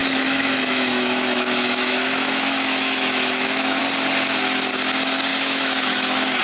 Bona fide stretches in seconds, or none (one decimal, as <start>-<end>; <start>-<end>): 3.8-5.3

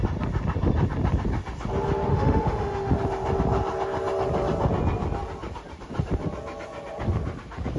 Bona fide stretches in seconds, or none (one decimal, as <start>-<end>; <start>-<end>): 0.0-2.1; 2.9-7.8

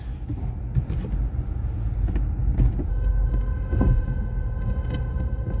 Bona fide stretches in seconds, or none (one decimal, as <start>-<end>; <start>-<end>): 0.0-2.9